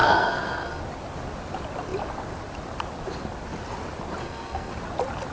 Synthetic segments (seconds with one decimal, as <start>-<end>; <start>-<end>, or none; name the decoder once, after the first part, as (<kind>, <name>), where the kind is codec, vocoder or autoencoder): 0.0-0.8 (codec, SNAC); 4.2-4.7